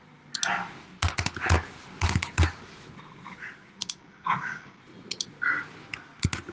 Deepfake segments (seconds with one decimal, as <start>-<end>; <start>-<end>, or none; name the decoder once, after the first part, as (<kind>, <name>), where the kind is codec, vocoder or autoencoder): 3.8-4.8 (codec, DAC)